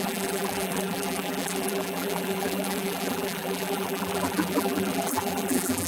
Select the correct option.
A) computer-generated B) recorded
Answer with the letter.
A